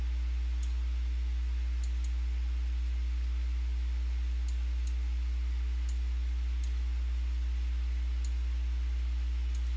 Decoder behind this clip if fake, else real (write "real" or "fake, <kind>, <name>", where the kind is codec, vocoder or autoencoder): real